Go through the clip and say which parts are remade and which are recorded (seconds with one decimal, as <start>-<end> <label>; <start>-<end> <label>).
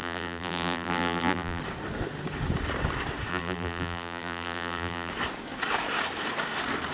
0.0-1.6 remade; 1.6-3.3 recorded; 3.3-5.1 remade; 5.1-6.9 recorded